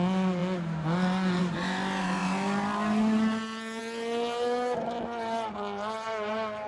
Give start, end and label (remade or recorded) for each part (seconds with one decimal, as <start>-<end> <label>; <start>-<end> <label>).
0.0-6.7 recorded